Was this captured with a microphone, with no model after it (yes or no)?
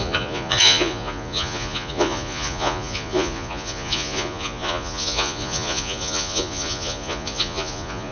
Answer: no